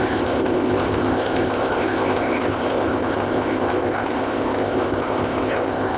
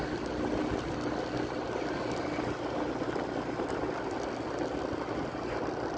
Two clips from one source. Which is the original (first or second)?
second